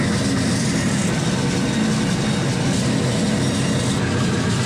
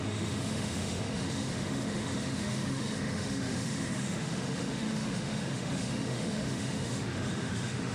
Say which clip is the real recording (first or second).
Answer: first